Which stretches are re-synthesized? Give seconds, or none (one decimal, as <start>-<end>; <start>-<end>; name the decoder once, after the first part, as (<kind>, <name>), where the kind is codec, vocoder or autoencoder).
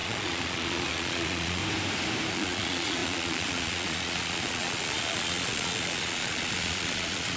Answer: 0.0-1.6 (vocoder, Vocos); 2.3-7.4